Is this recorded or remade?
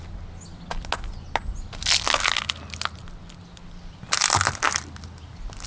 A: recorded